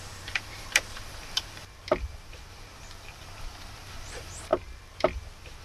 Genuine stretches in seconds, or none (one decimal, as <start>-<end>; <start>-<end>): 4.5-5.6

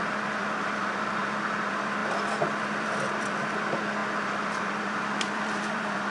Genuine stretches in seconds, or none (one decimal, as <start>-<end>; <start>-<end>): none

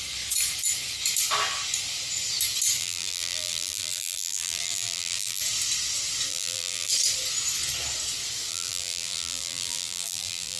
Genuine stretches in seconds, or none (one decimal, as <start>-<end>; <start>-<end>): 0.0-2.8; 5.4-6.3; 6.9-8.5

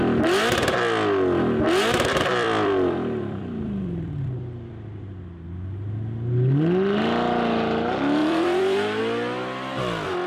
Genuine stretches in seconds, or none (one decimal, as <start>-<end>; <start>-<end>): 0.0-2.3; 5.2-8.2; 9.0-10.3

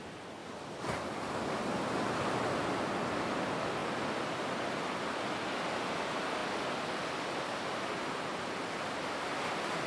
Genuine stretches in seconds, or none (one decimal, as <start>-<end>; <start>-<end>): 0.0-0.4; 2.1-3.8; 4.8-9.9

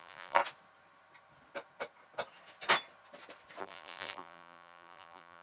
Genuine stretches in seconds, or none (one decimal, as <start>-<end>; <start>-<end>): 0.4-3.6

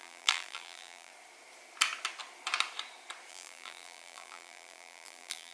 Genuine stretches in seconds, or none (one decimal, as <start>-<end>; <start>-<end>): 1.1-3.3

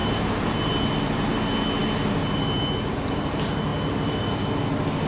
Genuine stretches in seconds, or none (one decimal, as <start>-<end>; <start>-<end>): 0.9-5.1